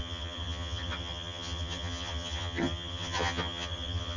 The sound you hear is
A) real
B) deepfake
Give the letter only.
B